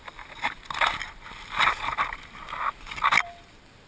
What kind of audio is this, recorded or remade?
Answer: recorded